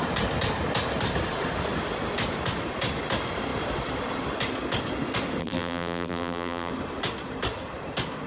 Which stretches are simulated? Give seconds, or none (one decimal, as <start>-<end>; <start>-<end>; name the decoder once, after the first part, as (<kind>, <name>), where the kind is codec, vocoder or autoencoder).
5.4-6.7 (vocoder, BigVGAN v2)